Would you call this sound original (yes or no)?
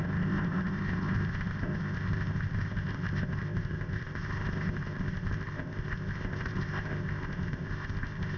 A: no